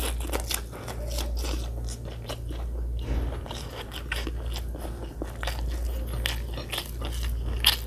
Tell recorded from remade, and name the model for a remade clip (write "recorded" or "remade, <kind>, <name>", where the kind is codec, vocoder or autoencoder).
recorded